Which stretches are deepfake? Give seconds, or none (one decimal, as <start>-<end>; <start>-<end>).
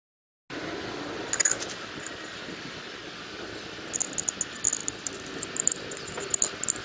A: 4.8-5.3